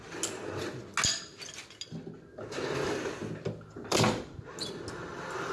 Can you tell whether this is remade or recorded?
recorded